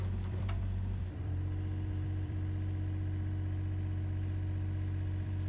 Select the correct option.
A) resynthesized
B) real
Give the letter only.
A